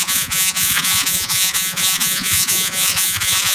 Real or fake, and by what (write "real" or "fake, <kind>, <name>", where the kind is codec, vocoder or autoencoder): fake, vocoder, Vocos